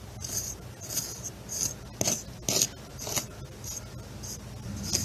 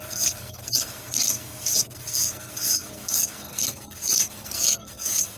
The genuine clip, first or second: first